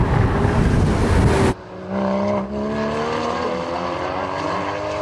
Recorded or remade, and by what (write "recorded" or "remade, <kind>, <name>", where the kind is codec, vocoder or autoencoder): recorded